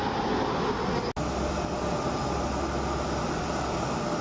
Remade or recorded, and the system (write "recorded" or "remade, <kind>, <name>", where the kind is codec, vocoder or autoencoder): recorded